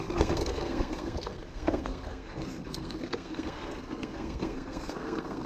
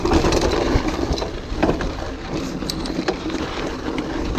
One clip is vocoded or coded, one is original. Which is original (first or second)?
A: second